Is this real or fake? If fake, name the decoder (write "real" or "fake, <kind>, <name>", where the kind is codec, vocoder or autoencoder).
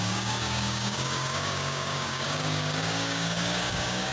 fake, codec, DAC